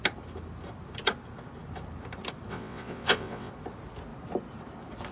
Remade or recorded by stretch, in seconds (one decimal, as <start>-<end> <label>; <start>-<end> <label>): 0.0-2.5 recorded; 2.5-3.5 remade; 3.5-5.1 recorded